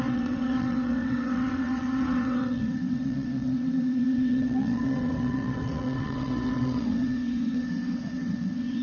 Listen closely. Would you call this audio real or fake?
fake